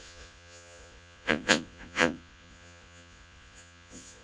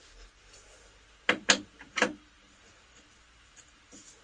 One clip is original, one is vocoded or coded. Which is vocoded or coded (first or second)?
first